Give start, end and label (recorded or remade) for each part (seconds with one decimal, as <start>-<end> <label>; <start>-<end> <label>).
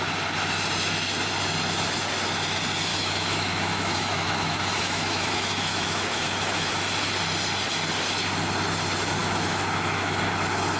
0.0-2.9 recorded; 2.9-6.7 remade; 6.7-9.2 recorded; 9.2-10.2 remade; 10.2-10.8 recorded